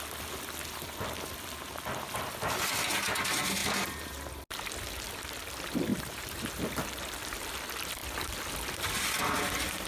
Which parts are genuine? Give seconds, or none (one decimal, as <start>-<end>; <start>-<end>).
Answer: 0.0-3.6; 4.4-5.9; 6.5-9.9